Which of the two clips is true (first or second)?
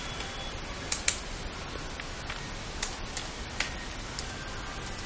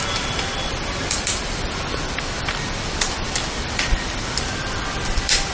first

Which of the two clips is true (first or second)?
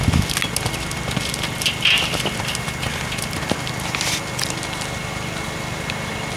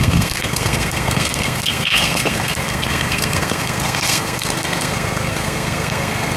first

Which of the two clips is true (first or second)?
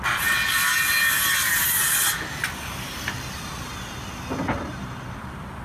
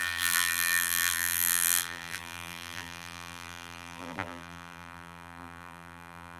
first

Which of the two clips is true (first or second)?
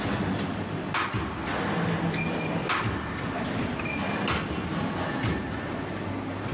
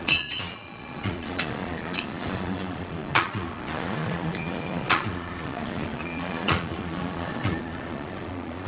first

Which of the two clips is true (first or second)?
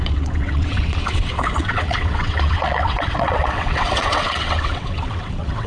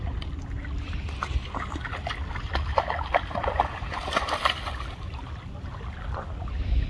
second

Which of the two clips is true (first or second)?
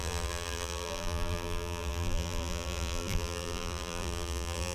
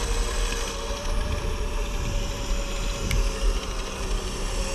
second